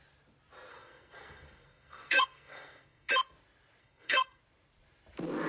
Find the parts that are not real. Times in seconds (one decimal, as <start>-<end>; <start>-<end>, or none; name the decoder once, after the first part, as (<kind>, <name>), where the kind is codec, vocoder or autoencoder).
0.7-3.1 (codec, SNAC); 3.8-4.4